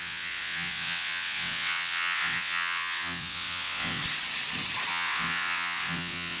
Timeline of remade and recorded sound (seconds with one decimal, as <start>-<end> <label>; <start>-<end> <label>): 0.0-4.0 remade; 4.0-4.9 recorded; 4.9-6.4 remade